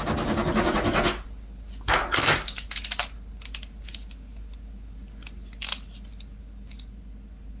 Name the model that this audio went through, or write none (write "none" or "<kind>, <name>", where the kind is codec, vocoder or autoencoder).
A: none